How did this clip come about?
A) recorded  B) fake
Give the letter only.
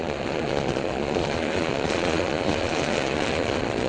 B